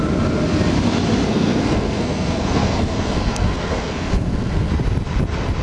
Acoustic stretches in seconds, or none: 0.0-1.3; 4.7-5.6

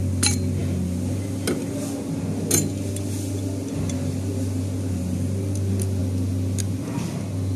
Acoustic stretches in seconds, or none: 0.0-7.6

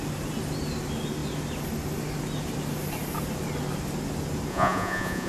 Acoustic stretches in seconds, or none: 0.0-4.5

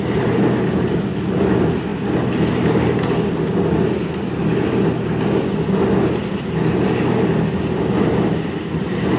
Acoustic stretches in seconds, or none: 0.0-9.2

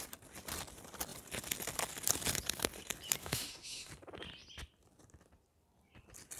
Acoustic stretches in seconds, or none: 0.0-3.2; 3.9-6.4

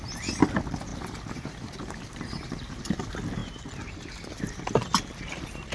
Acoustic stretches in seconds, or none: 0.0-0.9; 2.8-5.7

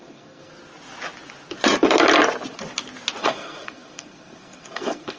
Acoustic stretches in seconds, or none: 0.5-3.2

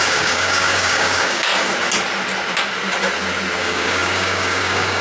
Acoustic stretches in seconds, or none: 1.5-3.6